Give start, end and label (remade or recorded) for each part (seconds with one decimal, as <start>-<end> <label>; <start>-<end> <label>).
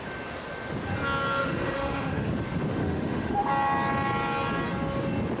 0.0-1.4 recorded; 1.4-2.3 remade; 2.3-2.8 recorded; 2.8-3.5 remade; 3.5-5.4 recorded